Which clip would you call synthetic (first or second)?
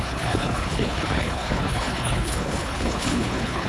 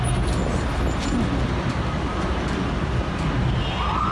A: first